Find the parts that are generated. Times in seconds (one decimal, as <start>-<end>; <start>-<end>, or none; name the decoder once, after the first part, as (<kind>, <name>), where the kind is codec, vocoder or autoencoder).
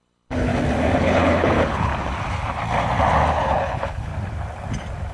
0.0-0.5 (codec, HILCodec); 1.0-1.9; 3.3-4.1